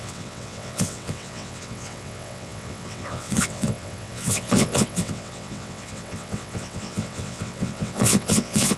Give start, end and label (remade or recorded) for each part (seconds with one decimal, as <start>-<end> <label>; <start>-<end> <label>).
0.0-8.8 remade